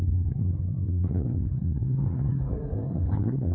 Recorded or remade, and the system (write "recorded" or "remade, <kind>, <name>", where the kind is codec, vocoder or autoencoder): remade, codec, SNAC